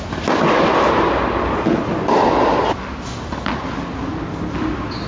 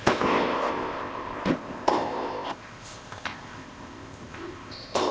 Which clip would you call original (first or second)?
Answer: first